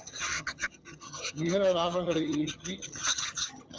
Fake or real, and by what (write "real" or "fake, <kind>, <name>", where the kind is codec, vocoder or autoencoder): fake, vocoder, HiFi-GAN